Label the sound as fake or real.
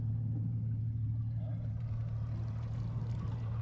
real